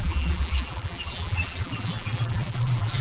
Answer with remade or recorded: remade